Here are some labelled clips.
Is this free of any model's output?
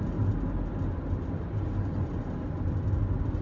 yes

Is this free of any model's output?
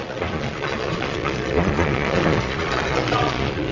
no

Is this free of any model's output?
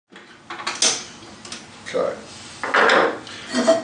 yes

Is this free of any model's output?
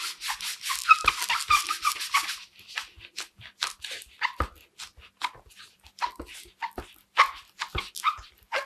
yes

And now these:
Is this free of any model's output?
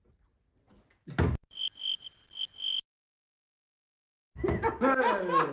yes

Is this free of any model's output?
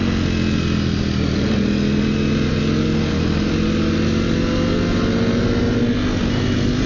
yes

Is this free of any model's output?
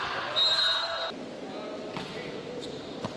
yes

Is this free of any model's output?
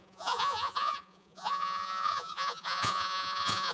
no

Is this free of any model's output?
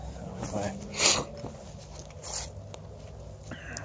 yes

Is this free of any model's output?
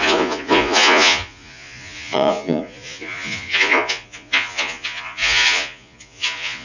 no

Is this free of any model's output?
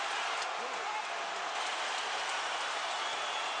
yes